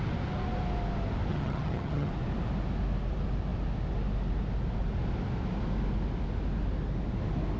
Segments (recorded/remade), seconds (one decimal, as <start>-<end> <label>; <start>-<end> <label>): 0.0-1.3 recorded; 1.3-2.1 remade; 2.1-7.6 recorded